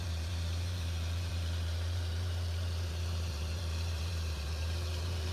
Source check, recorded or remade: remade